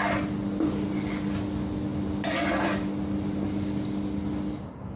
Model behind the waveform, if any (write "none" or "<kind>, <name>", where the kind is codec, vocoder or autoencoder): none